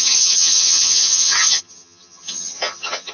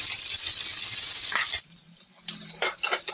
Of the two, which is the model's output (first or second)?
first